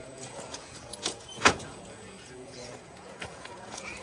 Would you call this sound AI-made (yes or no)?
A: yes